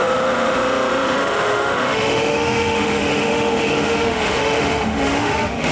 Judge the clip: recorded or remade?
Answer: remade